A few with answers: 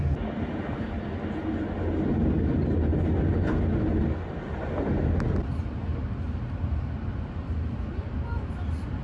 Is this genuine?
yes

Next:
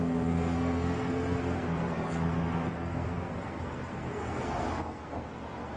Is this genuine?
no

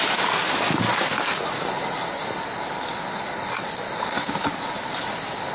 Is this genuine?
yes